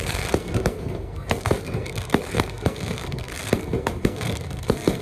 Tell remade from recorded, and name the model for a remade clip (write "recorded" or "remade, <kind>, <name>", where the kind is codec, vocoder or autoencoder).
remade, codec, SNAC